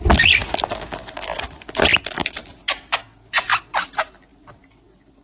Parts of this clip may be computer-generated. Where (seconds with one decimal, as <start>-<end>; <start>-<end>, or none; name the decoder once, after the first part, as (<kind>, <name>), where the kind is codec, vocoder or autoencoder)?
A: 0.0-2.4 (vocoder, BigVGAN v2); 3.3-3.7; 4.7-5.2

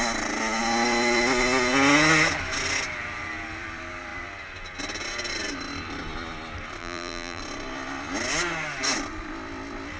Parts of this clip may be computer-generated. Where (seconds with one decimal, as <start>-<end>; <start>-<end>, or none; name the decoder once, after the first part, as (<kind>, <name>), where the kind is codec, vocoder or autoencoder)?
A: 6.8-7.4 (vocoder, BigVGAN v2)

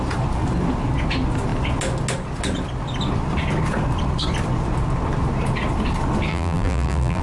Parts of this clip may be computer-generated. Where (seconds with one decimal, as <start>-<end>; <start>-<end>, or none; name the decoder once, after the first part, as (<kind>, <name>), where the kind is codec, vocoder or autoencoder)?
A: 6.3-7.2 (vocoder, BigVGAN v2)

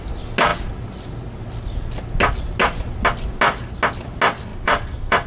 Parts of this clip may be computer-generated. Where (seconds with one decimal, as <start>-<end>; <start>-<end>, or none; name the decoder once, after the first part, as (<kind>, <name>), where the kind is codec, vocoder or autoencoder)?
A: 4.5-5.3 (vocoder, BigVGAN v2)

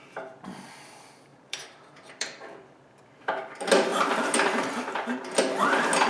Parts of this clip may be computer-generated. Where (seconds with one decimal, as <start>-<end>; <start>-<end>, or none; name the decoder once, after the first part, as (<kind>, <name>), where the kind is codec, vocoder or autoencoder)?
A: 1.3-2.6 (vocoder, BigVGAN v2); 3.9-5.2

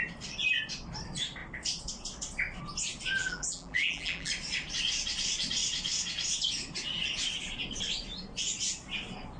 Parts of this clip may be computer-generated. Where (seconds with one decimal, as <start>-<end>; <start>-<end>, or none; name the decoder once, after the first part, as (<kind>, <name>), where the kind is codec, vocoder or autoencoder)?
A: 3.2-4.3 (vocoder, BigVGAN v2)

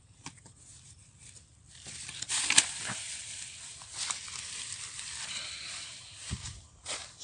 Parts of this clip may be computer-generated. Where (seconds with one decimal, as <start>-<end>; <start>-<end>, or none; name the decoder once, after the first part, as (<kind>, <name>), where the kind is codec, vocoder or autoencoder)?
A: none

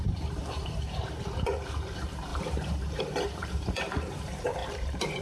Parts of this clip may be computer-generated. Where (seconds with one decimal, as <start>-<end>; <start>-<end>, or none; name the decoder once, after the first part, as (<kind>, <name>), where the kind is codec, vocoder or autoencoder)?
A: 0.0-5.2 (vocoder, BigVGAN v2)